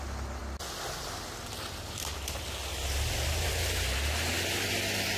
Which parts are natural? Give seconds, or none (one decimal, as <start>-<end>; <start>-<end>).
0.0-5.2